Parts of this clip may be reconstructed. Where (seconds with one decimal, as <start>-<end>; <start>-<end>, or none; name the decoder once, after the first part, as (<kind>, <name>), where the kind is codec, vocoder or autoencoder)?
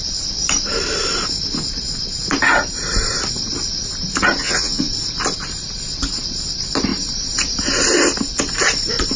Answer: 4.4-4.9 (vocoder, Vocos)